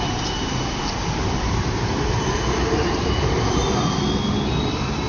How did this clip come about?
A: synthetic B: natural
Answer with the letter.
B